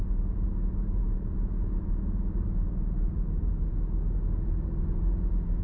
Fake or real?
real